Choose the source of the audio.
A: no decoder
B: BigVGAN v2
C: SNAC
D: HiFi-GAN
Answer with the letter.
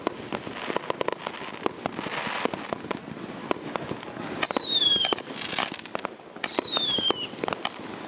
A